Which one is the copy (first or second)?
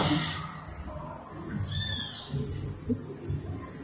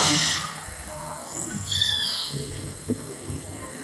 second